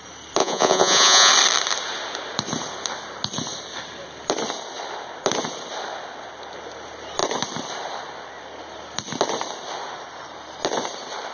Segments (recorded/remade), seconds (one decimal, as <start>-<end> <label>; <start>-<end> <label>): 0.0-0.4 recorded; 0.4-1.3 remade; 1.3-11.3 recorded